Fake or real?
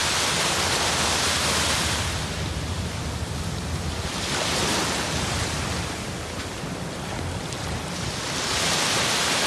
real